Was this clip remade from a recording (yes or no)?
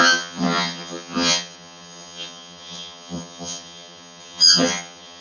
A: yes